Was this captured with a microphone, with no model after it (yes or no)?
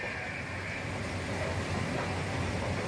yes